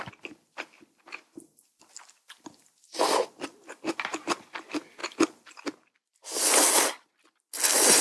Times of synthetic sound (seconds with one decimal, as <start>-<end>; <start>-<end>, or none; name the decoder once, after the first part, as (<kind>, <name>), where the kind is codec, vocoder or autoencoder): none